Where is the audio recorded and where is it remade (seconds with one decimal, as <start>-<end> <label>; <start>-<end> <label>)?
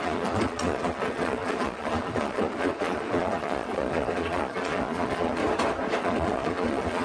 0.0-5.4 remade; 5.4-6.0 recorded; 6.0-7.0 remade